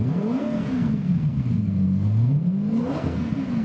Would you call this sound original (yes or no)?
no